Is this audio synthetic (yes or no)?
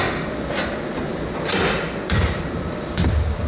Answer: yes